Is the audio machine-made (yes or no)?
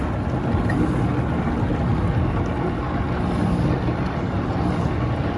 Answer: no